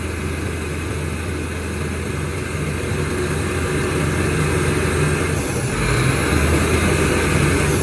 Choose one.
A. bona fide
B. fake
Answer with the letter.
A